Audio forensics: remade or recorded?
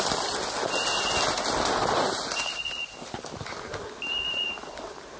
recorded